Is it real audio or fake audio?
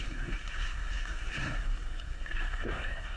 fake